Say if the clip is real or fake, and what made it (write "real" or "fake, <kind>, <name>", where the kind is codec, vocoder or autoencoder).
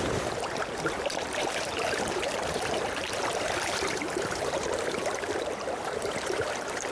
fake, vocoder, BigVGAN v2